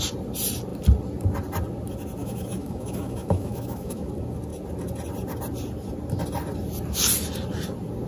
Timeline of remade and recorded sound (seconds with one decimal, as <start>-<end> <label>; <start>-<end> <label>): 0.0-2.2 recorded; 2.2-4.1 remade; 4.1-8.1 recorded